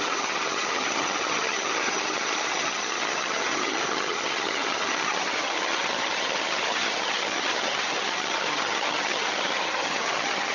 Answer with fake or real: fake